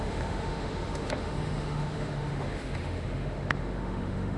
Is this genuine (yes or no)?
no